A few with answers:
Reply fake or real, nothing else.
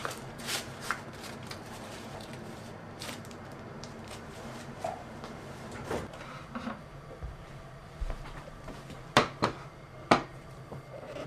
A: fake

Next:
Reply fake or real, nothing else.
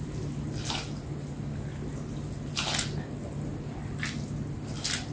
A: real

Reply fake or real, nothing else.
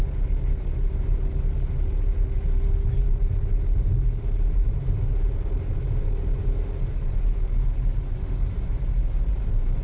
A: real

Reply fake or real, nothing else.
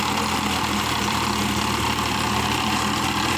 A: fake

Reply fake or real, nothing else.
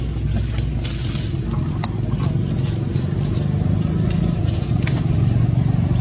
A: real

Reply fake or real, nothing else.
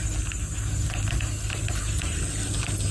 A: real